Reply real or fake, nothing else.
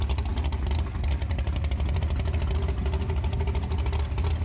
real